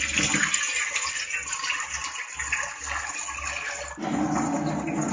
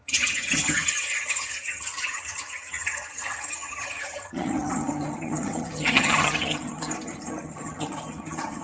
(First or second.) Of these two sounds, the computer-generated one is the second